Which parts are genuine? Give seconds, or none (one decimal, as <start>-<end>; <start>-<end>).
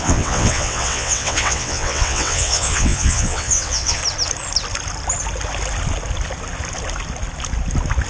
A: 4.0-8.1